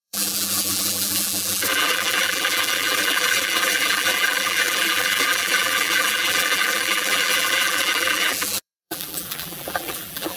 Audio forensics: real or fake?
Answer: fake